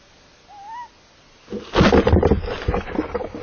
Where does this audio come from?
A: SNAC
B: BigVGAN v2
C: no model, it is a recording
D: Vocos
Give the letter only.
C